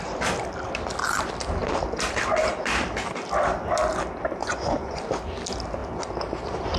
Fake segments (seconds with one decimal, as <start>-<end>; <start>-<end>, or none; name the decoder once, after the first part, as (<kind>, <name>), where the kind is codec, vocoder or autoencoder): 4.4-5.0 (vocoder, Vocos)